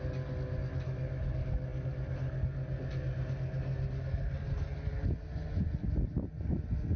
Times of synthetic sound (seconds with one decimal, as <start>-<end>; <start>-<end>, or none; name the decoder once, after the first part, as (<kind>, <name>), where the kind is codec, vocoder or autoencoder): none